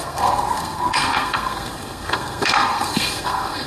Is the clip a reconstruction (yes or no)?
yes